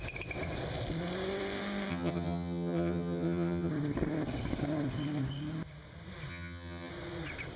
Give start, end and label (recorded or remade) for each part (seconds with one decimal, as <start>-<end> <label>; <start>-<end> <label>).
0.0-1.9 recorded; 1.9-3.7 remade; 3.7-6.3 recorded; 6.3-6.9 remade; 6.9-7.6 recorded